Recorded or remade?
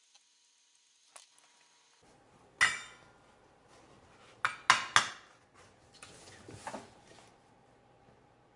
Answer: recorded